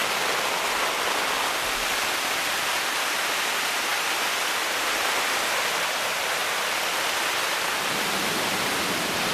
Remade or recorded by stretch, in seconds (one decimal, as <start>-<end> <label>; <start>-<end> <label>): 0.0-9.3 recorded